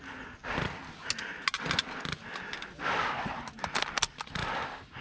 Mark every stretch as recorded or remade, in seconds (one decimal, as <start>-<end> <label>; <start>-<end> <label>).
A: 0.0-5.0 recorded